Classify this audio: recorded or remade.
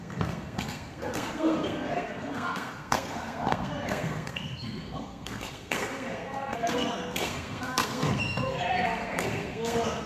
remade